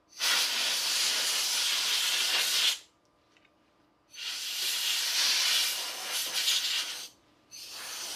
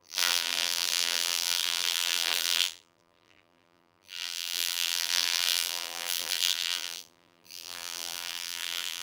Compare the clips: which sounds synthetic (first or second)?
second